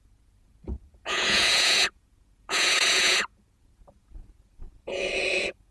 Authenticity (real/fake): fake